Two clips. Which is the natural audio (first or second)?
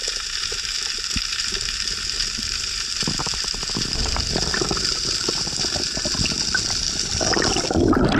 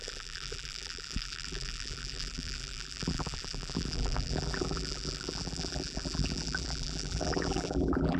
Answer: first